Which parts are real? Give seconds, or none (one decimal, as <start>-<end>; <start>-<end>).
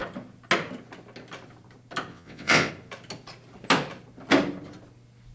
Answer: 0.0-2.1; 2.7-5.3